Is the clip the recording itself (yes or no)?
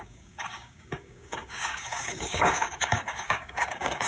no